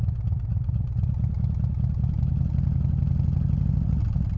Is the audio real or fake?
real